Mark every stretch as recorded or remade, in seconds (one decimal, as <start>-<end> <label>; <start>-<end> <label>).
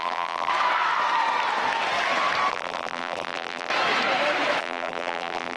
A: 0.0-0.5 remade; 0.5-2.5 recorded; 2.5-3.7 remade; 3.7-4.6 recorded; 4.6-5.6 remade